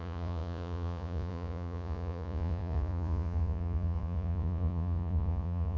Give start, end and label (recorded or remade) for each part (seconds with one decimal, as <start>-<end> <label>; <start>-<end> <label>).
0.0-5.8 remade